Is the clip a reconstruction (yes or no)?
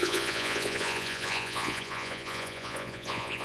yes